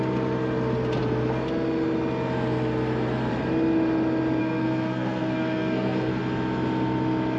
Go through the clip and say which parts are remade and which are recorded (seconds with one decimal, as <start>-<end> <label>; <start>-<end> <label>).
0.0-4.4 recorded; 4.4-6.2 remade; 6.2-7.4 recorded